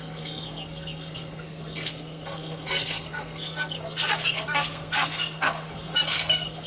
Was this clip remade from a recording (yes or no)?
yes